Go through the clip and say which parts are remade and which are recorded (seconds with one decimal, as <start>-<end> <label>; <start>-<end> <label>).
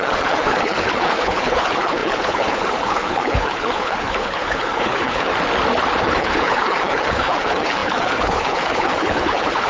0.0-5.3 remade; 5.3-6.0 recorded; 6.0-9.7 remade